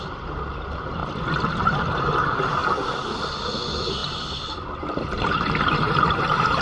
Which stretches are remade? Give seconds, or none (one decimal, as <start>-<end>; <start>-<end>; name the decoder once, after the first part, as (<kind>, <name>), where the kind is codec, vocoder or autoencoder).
0.0-1.0 (vocoder, BigVGAN v2); 1.6-2.6; 3.5-6.6